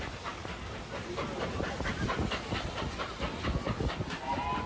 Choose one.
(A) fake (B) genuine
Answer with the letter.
B